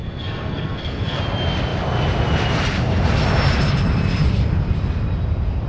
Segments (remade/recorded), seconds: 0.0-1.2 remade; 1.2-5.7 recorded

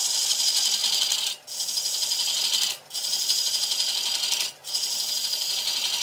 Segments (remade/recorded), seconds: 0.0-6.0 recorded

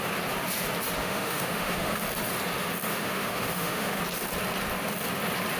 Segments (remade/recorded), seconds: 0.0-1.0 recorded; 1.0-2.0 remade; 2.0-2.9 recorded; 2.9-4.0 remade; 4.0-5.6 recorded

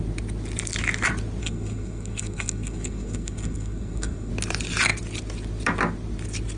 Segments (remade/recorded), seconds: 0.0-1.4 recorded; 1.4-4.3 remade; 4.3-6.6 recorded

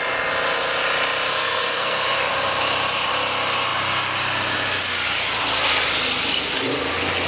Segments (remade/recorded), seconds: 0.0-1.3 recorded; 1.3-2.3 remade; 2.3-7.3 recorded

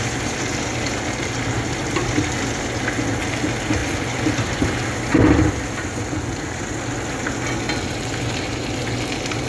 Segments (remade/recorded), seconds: 0.0-9.5 recorded